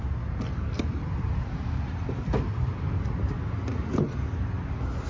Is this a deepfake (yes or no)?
no